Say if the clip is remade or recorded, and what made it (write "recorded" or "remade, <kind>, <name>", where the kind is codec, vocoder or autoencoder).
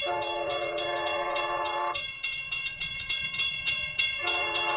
remade, vocoder, Vocos